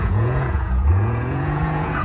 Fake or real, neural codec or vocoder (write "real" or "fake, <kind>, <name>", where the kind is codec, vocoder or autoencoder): fake, vocoder, Vocos